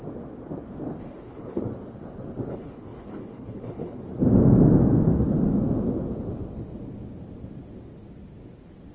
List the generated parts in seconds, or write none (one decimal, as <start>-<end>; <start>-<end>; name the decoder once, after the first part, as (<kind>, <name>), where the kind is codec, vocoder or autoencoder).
1.0-1.6 (codec, HILCodec); 2.5-4.0